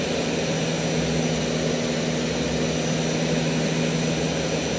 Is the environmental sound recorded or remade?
recorded